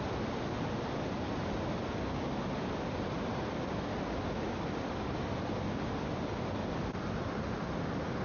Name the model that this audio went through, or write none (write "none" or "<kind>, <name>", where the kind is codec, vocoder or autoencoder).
none